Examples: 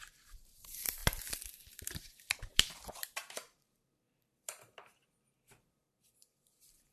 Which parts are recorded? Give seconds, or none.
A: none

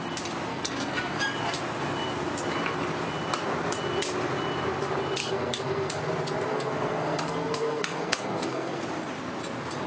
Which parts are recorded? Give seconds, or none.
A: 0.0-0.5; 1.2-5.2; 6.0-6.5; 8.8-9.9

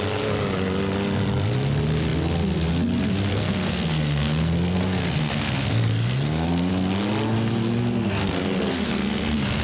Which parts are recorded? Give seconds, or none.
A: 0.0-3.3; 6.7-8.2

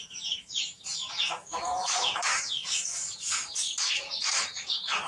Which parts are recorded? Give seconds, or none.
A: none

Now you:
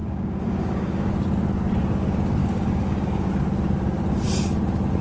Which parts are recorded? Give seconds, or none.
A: 1.1-2.4; 3.3-5.0

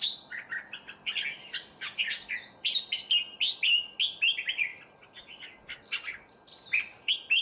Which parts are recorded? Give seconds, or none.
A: 0.0-7.4

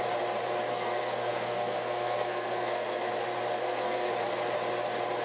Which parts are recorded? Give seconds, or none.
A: 0.0-0.7; 3.1-3.6; 4.1-5.2

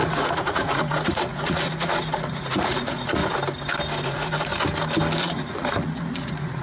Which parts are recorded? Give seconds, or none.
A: 3.2-4.0; 4.5-5.2